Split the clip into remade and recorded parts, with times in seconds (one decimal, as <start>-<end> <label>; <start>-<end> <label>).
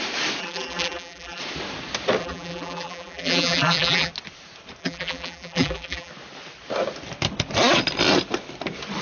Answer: 0.0-0.4 recorded; 0.4-1.4 remade; 1.4-2.2 recorded; 2.2-4.1 remade; 4.1-4.8 recorded; 4.8-6.1 remade; 6.1-9.0 recorded